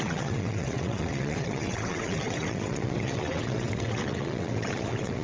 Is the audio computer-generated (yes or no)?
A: yes